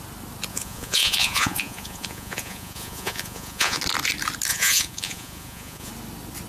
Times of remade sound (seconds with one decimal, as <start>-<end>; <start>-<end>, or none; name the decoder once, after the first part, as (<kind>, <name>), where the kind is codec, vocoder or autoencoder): 0.5-3.8 (vocoder, Vocos); 4.5-5.9

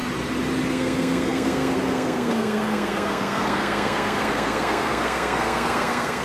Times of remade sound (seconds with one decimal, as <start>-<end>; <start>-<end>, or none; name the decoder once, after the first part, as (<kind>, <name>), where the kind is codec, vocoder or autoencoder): 0.7-6.2 (codec, SNAC)

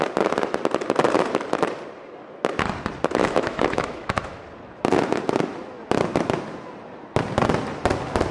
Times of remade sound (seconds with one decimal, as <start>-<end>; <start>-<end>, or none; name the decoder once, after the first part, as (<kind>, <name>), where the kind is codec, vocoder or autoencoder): 3.2-4.4 (autoencoder, DAC-VAE)